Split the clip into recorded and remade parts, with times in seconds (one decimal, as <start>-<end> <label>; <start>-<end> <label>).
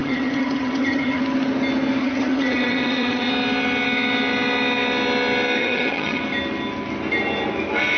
0.0-1.2 remade; 1.2-2.0 recorded; 2.0-3.3 remade; 3.3-5.6 recorded; 5.6-6.2 remade; 6.2-8.0 recorded